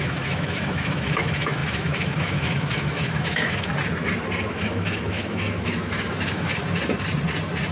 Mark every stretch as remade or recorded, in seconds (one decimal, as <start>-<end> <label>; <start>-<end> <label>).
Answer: 0.0-3.7 remade; 3.7-4.5 recorded; 4.5-6.5 remade; 6.5-7.7 recorded